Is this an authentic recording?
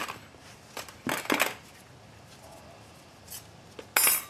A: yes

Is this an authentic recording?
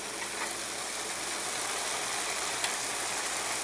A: no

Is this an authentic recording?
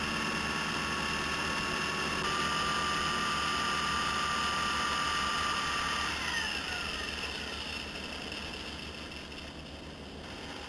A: yes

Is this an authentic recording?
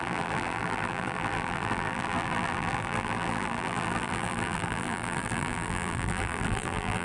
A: no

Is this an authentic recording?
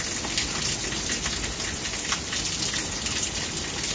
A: yes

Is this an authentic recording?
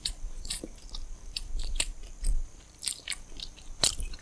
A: no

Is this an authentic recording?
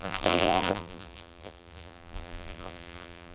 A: no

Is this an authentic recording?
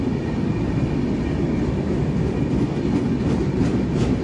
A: yes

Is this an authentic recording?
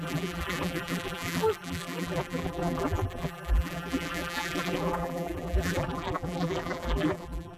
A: no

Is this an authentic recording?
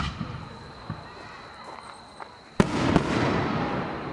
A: no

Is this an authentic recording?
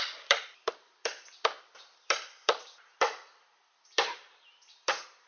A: no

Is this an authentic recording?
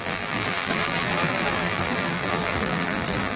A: no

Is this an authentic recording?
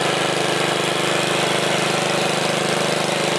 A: yes